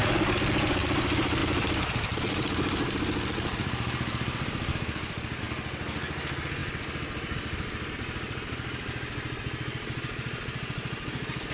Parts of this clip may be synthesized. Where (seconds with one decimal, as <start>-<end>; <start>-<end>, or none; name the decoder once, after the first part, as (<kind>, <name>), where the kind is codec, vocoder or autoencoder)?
1.4-5.4 (vocoder, BigVGAN v2)